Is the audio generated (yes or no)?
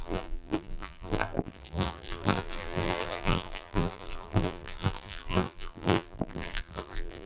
yes